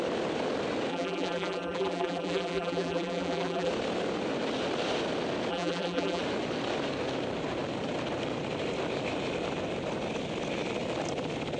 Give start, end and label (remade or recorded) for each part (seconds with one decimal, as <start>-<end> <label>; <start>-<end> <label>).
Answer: 0.0-0.9 recorded; 0.9-3.7 remade; 3.7-5.5 recorded; 5.5-6.2 remade; 6.2-11.6 recorded